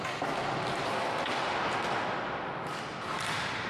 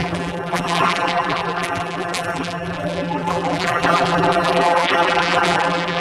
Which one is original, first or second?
first